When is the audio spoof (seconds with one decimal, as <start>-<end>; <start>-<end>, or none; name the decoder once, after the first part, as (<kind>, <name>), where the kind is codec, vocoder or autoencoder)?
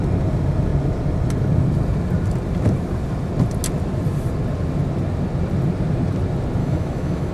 6.6-7.3 (autoencoder, DAC-VAE)